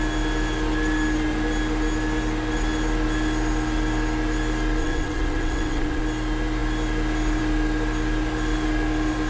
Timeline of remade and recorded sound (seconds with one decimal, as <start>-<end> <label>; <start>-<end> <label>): 0.0-4.8 recorded; 4.8-6.0 remade; 6.0-9.3 recorded